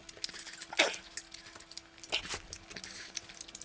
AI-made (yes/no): no